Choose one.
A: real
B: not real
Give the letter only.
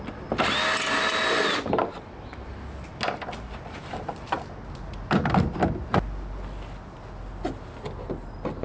A